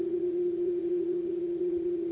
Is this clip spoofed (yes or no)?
yes